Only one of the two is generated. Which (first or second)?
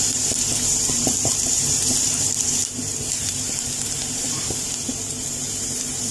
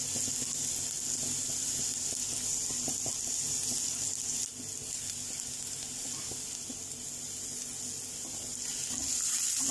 first